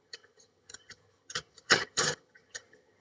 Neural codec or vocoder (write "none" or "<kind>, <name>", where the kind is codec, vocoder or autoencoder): vocoder, HiFi-GAN